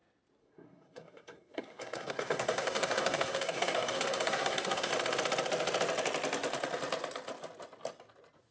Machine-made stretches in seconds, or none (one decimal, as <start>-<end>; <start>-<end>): 0.4-4.9